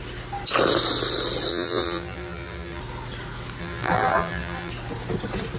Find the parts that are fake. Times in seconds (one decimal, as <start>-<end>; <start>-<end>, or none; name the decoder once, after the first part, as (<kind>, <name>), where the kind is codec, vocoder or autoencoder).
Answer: 1.5-2.8 (vocoder, BigVGAN v2); 3.6-4.7